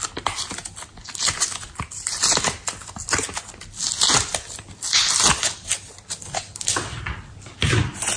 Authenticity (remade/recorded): recorded